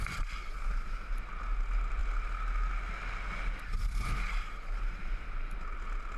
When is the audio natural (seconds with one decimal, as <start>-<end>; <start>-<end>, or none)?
0.0-6.2